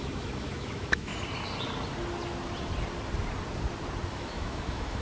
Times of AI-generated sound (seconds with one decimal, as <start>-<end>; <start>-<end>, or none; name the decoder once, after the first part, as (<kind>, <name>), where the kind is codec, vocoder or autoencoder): 0.0-1.1 (autoencoder, DAC-VAE); 4.1-5.0